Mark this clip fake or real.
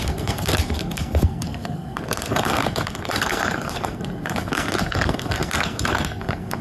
fake